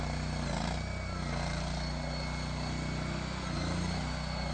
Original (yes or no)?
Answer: yes